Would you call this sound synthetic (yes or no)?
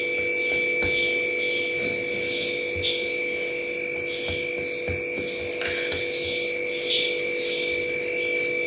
no